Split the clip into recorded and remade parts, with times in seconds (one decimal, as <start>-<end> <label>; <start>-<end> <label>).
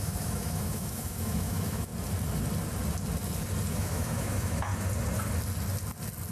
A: 0.0-1.9 remade; 1.9-3.7 recorded; 3.7-4.7 remade; 4.7-6.3 recorded